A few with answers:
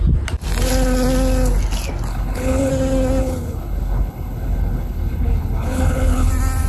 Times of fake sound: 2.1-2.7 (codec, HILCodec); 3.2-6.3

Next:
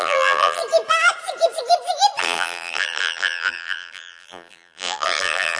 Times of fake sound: 0.0-0.6 (vocoder, BigVGAN v2); 2.2-5.6

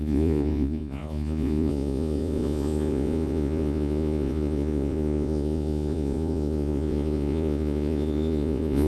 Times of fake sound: 0.0-8.9 (vocoder, Vocos)

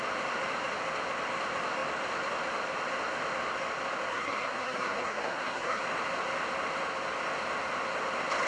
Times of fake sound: 4.1-5.8 (codec, SNAC)

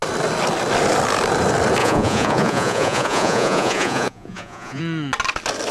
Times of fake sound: 1.8-4.8 (vocoder, Vocos)

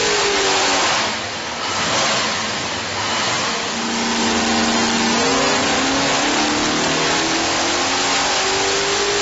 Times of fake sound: none